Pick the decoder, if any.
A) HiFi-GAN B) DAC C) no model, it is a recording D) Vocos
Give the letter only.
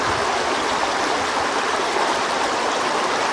C